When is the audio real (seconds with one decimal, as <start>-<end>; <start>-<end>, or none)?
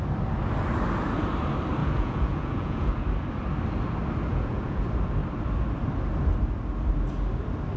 0.0-1.8; 2.9-4.3; 4.8-7.8